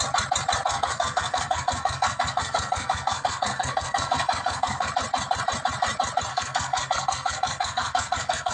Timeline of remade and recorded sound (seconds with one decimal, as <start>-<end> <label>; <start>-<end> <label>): 0.0-0.7 recorded; 0.7-4.9 remade; 4.9-6.3 recorded; 6.3-8.5 remade